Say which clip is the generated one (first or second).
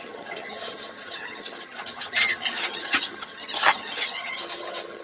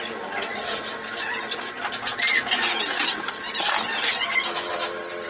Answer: first